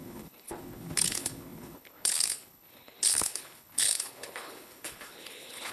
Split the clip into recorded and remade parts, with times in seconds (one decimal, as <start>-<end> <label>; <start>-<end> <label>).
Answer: 0.0-5.7 remade